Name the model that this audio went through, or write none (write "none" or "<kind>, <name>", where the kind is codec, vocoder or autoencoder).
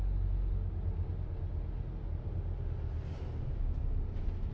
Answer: none